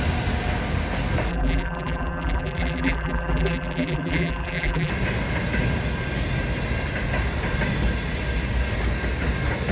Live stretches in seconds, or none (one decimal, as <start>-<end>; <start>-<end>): 0.0-1.3; 4.9-9.7